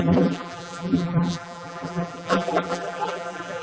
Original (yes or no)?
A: no